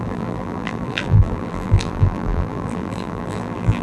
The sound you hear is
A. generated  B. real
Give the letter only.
A